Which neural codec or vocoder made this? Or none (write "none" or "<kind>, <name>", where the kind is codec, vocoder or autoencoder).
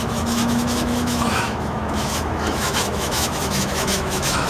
autoencoder, DAC-VAE